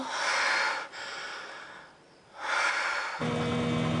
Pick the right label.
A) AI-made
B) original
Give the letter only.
B